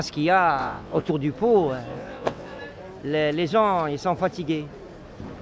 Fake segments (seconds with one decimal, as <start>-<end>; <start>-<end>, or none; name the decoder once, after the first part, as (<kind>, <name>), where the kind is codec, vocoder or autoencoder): 0.6-1.1 (vocoder, WaveNeXt); 1.9-2.6